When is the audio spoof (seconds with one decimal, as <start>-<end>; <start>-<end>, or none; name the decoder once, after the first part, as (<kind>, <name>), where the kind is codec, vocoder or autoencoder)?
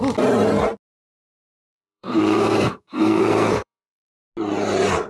1.4-4.1 (codec, SNAC)